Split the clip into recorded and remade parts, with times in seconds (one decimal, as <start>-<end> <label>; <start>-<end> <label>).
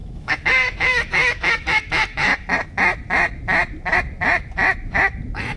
0.0-2.3 remade; 2.3-5.6 recorded